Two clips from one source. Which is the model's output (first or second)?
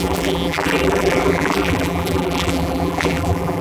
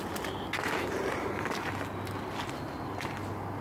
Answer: first